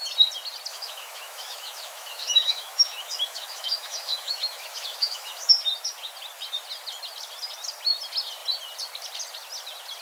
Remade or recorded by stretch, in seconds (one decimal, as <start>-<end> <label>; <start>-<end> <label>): 0.0-0.7 recorded; 0.7-5.5 remade; 5.5-10.0 recorded